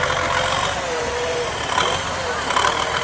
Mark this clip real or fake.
real